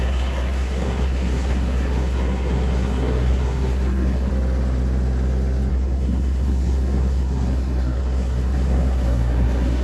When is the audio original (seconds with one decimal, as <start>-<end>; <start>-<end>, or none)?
4.3-5.7